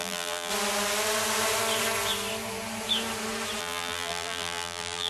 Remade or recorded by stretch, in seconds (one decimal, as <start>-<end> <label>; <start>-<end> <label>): 0.0-0.5 remade; 0.5-3.6 recorded; 3.6-5.1 remade